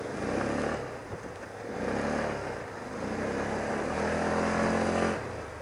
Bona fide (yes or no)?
yes